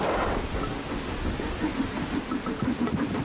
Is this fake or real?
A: real